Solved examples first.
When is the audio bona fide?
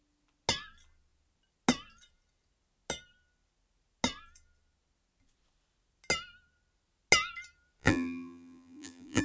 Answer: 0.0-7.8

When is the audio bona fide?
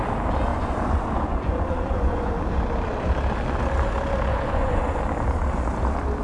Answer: 0.0-0.5; 2.3-4.3; 5.0-6.2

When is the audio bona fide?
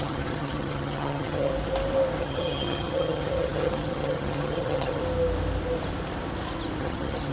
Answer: 1.5-2.2; 5.0-6.8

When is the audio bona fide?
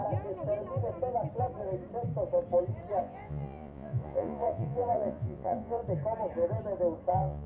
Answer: 0.0-3.0; 5.8-7.1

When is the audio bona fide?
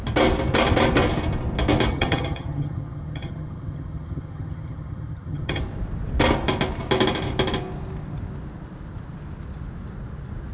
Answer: 0.0-1.9; 5.6-10.5